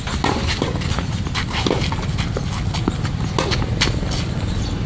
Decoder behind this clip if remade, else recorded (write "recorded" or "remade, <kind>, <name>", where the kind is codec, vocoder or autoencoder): recorded